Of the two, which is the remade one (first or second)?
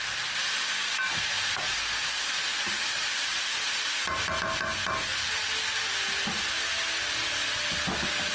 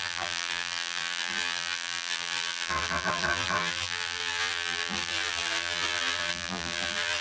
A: second